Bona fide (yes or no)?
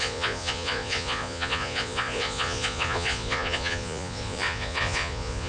no